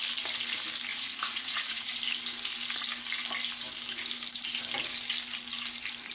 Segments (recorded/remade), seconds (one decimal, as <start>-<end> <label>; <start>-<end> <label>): 0.0-0.9 recorded; 0.9-2.0 remade; 2.0-6.1 recorded

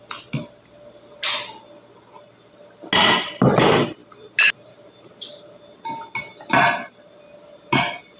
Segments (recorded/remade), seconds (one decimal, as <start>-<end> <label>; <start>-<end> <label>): 0.0-8.2 recorded